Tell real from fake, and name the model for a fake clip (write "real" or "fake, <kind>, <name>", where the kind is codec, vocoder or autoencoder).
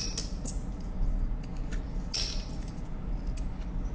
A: real